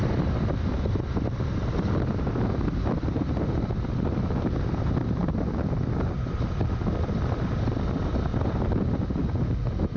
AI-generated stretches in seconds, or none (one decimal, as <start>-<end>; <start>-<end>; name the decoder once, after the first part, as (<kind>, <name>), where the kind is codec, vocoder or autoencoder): 8.3-8.9 (vocoder, BigVGAN v2)

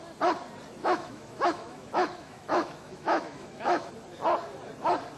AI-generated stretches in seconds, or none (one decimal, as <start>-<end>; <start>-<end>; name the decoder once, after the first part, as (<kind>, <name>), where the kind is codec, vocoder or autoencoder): 0.8-3.9 (autoencoder, DAC-VAE)